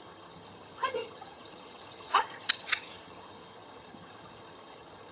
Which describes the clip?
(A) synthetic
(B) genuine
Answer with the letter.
A